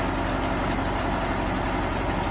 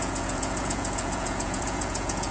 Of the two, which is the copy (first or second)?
second